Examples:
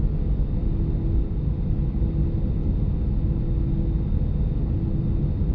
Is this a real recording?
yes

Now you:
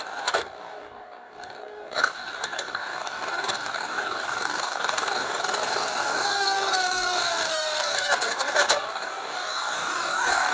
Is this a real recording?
no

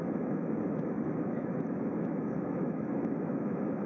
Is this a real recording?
no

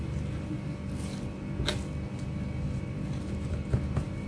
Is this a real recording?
yes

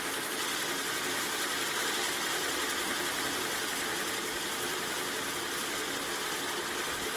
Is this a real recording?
yes